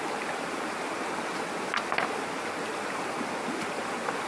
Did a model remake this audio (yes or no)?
no